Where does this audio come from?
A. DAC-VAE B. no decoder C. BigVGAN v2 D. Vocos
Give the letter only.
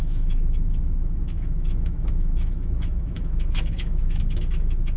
A